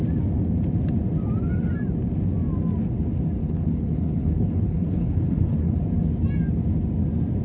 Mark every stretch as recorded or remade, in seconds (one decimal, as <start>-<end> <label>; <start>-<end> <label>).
0.0-3.4 recorded; 3.4-5.8 remade; 5.8-7.4 recorded